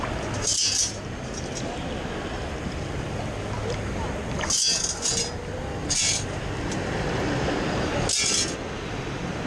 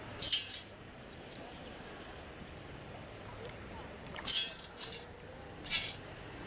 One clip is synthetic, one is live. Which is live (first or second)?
first